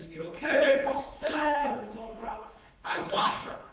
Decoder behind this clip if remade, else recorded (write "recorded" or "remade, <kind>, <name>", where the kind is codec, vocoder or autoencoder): remade, codec, HILCodec